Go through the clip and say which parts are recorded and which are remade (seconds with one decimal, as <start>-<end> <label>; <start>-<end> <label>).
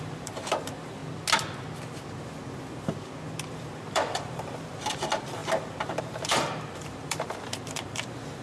0.0-1.0 remade; 1.0-3.5 recorded; 3.5-8.4 remade